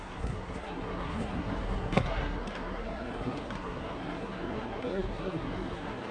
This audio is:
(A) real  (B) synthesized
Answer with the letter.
B